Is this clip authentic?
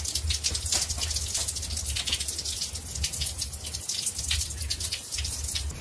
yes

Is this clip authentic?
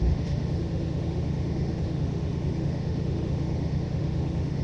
no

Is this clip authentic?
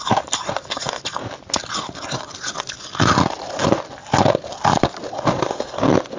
yes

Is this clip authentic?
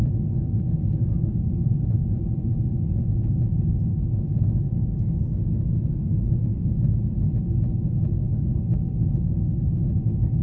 yes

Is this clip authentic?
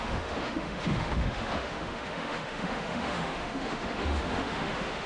no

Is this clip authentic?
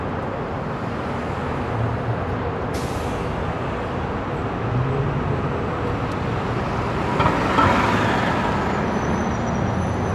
yes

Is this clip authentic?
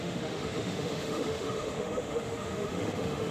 no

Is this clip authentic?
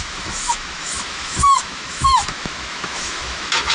no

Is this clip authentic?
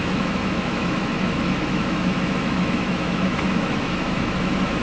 no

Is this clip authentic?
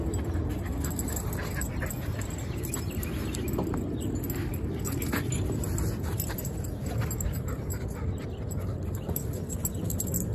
yes